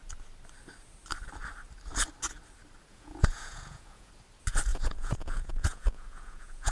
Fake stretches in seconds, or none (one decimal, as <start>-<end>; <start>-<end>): 2.9-4.1; 4.7-6.7